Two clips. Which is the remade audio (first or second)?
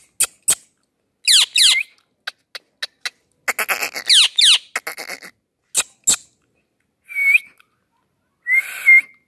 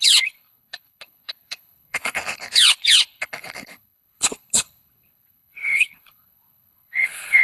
second